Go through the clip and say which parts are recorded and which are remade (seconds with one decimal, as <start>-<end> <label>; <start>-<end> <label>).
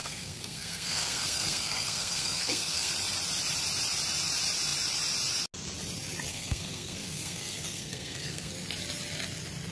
0.0-2.9 remade; 2.9-6.3 recorded; 6.3-8.5 remade; 8.5-9.7 recorded